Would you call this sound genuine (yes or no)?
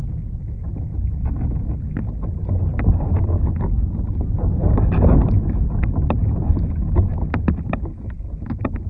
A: yes